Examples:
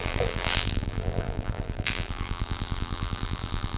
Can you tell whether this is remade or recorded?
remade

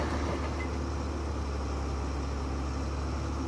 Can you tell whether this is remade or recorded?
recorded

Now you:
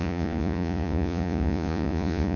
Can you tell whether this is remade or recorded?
remade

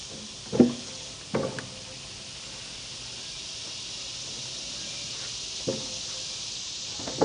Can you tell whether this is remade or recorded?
recorded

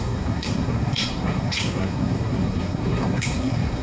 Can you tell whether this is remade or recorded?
remade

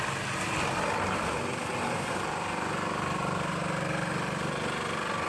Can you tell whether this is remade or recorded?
recorded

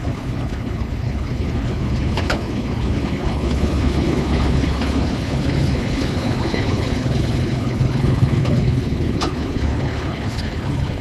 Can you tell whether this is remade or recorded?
remade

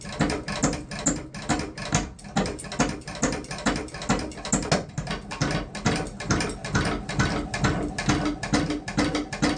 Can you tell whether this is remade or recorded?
recorded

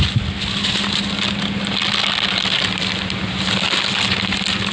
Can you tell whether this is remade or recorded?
recorded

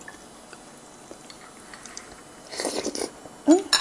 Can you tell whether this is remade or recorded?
recorded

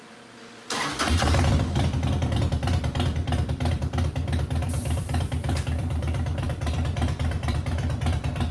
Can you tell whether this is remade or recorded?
remade